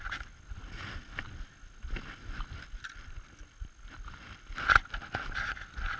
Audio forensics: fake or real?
real